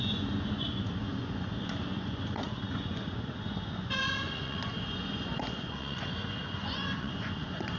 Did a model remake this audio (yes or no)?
yes